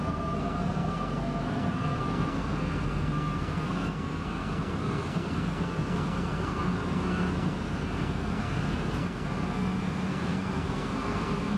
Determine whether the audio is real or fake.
fake